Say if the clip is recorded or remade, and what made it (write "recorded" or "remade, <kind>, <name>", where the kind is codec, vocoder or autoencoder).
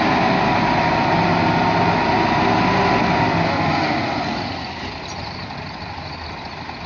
recorded